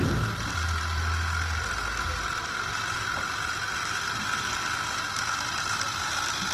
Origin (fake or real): real